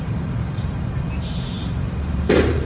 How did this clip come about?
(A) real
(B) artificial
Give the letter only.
B